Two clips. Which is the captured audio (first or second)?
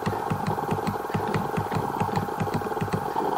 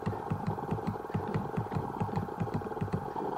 first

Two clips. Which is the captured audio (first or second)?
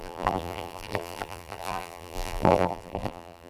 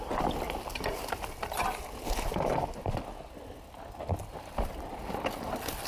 second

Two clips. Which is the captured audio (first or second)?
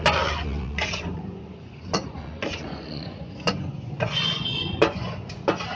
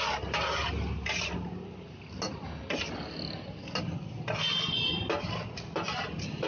second